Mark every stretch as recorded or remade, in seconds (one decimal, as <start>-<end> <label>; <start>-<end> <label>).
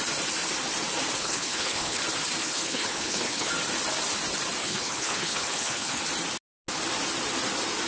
0.0-1.2 recorded; 1.2-2.0 remade; 2.0-2.4 recorded; 2.4-3.5 remade; 3.5-4.6 recorded; 4.6-6.0 remade; 6.0-7.9 recorded